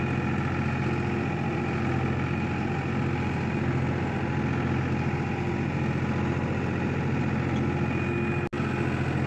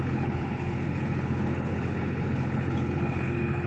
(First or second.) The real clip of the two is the first